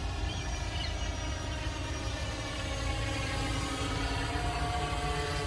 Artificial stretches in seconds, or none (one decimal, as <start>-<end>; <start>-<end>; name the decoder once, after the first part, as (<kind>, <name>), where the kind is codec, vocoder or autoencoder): 0.0-1.0 (vocoder, BigVGAN v2); 1.8-5.1